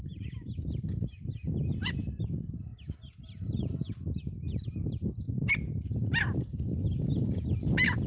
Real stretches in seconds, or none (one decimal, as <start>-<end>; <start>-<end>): 0.0-8.1